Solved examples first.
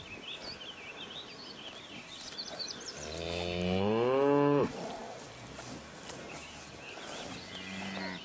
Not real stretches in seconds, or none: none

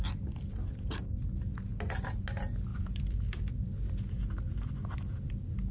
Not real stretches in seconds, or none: 2.7-5.3